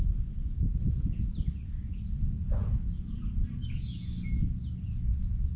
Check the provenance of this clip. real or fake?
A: real